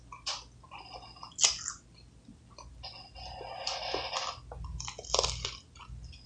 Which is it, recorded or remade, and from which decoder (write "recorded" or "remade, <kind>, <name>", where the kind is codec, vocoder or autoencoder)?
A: recorded